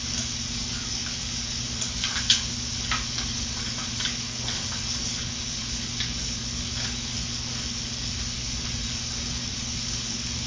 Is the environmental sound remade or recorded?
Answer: remade